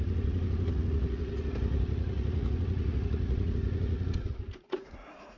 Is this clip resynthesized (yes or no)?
yes